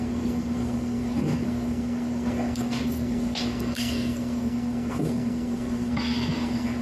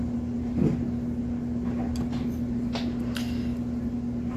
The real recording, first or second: second